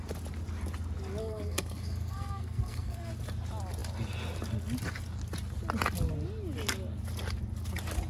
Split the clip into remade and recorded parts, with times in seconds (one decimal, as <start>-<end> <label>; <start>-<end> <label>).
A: 0.0-1.2 recorded; 1.2-3.1 remade; 3.1-8.1 recorded